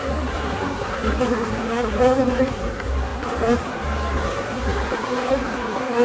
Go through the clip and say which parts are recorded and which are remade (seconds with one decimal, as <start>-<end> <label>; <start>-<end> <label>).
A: 0.0-6.0 remade